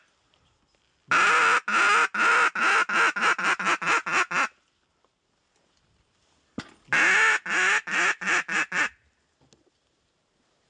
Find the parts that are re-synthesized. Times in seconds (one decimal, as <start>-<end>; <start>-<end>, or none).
none